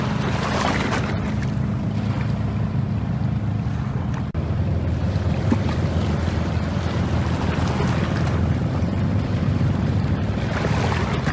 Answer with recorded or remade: recorded